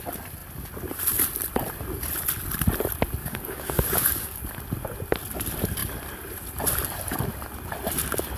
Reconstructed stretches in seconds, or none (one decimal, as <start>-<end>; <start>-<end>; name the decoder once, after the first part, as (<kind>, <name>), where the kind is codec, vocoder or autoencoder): 3.2-4.4 (codec, DAC)